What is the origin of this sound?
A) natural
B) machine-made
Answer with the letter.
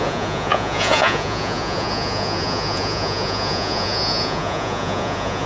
B